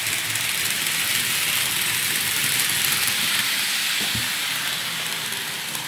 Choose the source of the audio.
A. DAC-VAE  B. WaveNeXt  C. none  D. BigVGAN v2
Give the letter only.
C